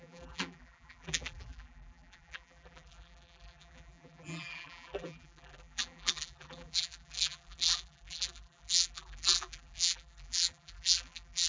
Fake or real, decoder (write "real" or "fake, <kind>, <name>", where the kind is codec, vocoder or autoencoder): fake, vocoder, BigVGAN v2